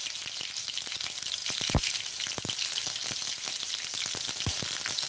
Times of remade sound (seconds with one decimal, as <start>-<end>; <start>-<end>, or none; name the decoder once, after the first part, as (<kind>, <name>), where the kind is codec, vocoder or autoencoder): none